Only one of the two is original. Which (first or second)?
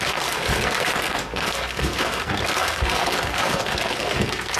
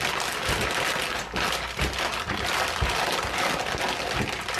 second